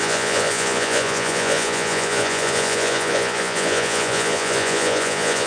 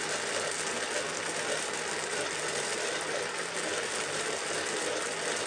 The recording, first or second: second